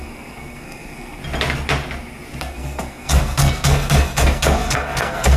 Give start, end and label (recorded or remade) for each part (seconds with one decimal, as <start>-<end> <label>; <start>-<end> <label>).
0.0-1.2 remade; 1.2-2.4 recorded; 2.4-5.4 remade